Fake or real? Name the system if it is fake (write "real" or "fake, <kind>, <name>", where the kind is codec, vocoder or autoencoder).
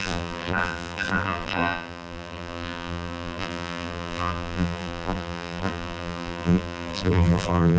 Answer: fake, vocoder, BigVGAN v2